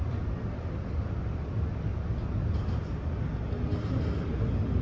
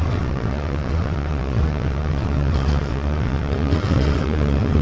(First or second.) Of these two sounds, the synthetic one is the second